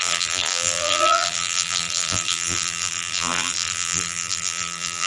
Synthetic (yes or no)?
yes